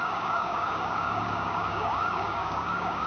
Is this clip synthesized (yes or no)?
yes